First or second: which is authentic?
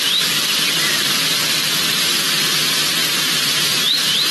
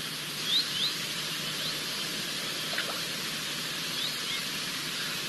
second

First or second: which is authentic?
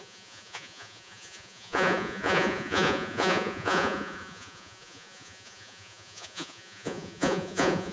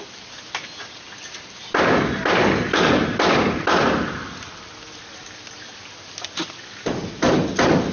second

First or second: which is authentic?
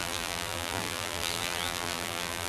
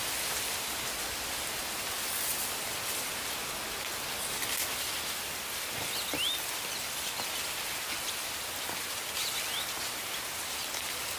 second